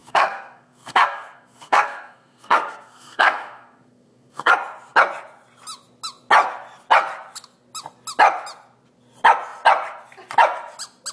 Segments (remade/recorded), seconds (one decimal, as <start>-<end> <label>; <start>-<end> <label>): 0.0-4.5 remade; 4.5-11.1 recorded